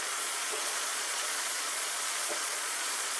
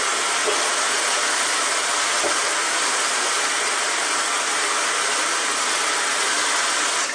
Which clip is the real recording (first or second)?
second